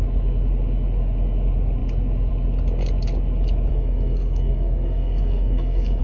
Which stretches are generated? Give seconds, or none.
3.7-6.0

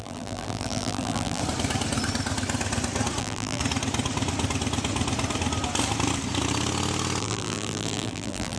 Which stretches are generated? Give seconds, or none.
0.0-1.4; 3.2-3.6; 7.2-8.6

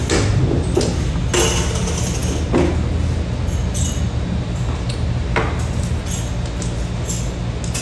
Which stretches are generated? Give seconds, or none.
none

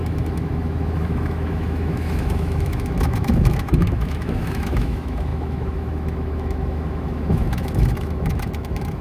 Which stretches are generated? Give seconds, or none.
0.0-9.0

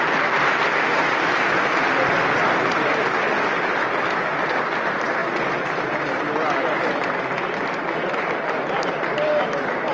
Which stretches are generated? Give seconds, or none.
9.3-9.9